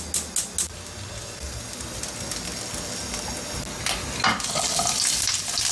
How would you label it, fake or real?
real